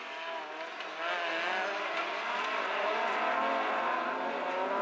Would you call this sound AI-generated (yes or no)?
no